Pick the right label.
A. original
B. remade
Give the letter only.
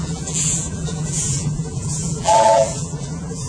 B